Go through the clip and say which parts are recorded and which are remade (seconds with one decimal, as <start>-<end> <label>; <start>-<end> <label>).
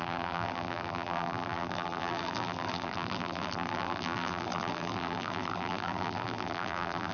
0.0-7.1 remade